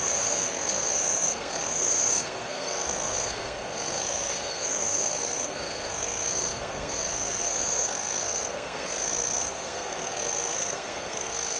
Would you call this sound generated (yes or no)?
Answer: yes